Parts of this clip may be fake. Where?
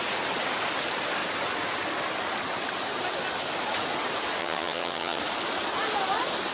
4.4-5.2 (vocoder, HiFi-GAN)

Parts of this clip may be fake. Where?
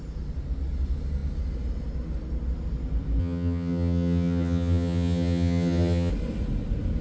3.2-6.1 (vocoder, HiFi-GAN)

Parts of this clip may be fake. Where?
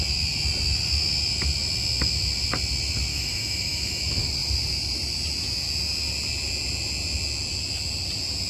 3.1-4.0 (autoencoder, DAC-VAE)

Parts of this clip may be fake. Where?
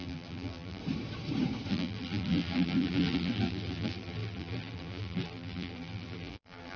0.0-0.8 (vocoder, BigVGAN v2); 1.7-6.8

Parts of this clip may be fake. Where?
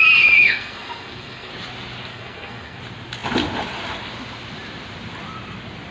0.4-1.5 (codec, SNAC); 2.1-2.8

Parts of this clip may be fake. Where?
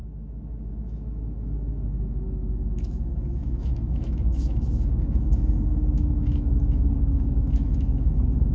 0.0-8.5 (autoencoder, DAC-VAE)